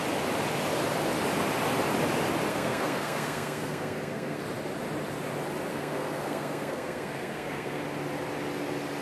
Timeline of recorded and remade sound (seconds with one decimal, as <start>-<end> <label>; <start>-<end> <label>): 0.0-2.5 recorded; 2.5-4.4 remade; 4.4-5.7 recorded; 5.7-7.8 remade; 7.8-9.0 recorded

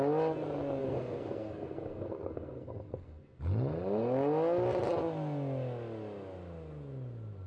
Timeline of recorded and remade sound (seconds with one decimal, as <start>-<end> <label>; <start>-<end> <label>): 0.0-0.8 recorded; 0.8-3.4 remade; 3.4-7.5 recorded

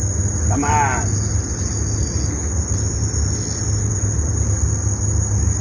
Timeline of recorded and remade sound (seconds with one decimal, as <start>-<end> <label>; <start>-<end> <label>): 0.0-5.6 recorded

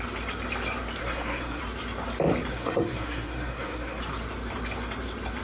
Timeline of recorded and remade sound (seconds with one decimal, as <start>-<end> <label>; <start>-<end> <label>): 0.0-1.0 recorded; 1.0-1.6 remade; 1.6-2.5 recorded; 2.5-4.0 remade; 4.0-5.4 recorded

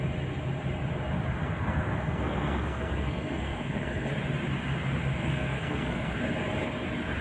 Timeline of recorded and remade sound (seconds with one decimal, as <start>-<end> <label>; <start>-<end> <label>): 0.0-1.4 recorded; 1.4-4.1 remade; 4.1-5.2 recorded; 5.2-6.2 remade; 6.2-7.2 recorded

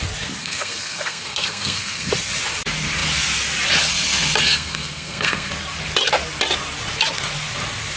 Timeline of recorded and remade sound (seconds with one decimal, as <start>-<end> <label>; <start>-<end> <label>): 0.0-0.4 recorded; 0.4-2.1 remade; 2.1-4.4 recorded; 4.4-5.5 remade; 5.5-8.0 recorded

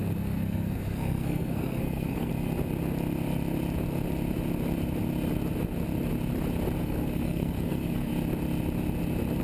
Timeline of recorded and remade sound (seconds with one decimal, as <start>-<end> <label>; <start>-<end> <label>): 0.0-2.3 remade; 2.3-6.8 recorded; 6.8-8.1 remade; 8.1-9.4 recorded

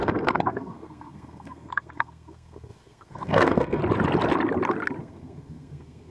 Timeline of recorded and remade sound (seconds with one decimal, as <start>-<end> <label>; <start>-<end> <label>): 0.0-3.8 remade; 3.8-5.0 recorded; 5.0-6.1 remade